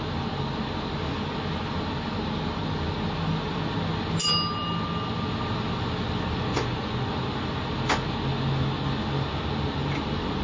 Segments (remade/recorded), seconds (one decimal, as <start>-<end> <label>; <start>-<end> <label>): 0.0-6.5 recorded; 6.5-7.1 remade; 7.1-10.4 recorded